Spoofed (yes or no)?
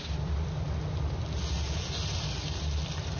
no